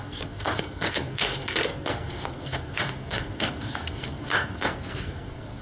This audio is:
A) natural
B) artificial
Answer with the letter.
B